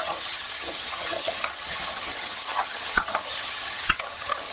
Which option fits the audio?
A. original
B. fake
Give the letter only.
B